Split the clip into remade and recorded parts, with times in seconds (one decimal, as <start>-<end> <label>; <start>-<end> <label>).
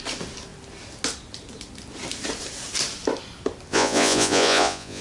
0.0-3.7 recorded; 3.7-5.0 remade